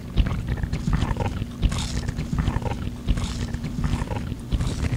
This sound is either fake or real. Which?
fake